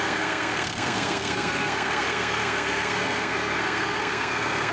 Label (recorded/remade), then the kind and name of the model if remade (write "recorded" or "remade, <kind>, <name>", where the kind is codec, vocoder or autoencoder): remade, codec, SNAC